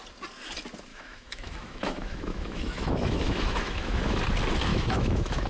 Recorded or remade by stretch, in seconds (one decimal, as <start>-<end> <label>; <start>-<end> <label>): 0.0-0.9 recorded; 0.9-4.2 remade; 4.2-4.7 recorded; 4.7-5.5 remade